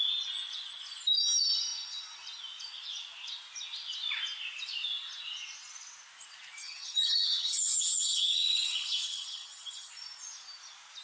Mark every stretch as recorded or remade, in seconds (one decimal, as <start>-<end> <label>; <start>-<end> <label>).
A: 0.0-6.6 recorded; 6.6-9.9 remade; 9.9-11.0 recorded